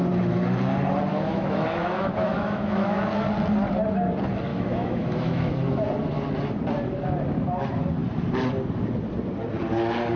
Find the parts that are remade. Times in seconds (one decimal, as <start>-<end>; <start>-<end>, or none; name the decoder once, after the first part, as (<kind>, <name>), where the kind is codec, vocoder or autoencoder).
1.1-3.0 (autoencoder, DAC-VAE); 4.5-5.5